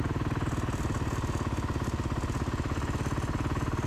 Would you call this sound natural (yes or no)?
yes